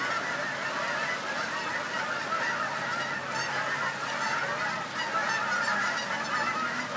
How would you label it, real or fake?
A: real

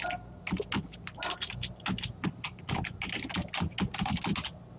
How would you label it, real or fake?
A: real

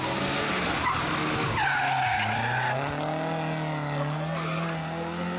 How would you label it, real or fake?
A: real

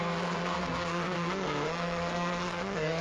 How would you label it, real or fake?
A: fake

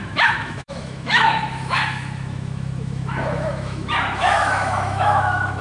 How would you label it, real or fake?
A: fake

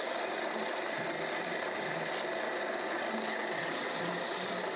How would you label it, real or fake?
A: real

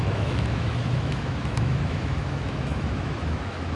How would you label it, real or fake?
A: fake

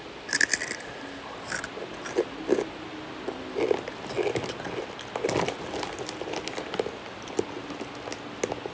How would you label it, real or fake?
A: real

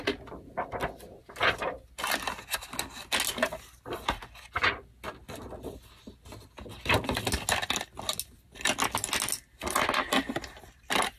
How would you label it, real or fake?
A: real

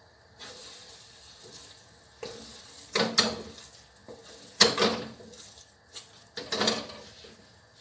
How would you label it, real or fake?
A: real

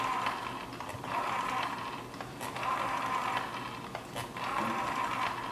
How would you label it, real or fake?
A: real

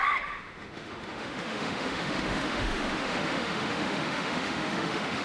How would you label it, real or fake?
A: fake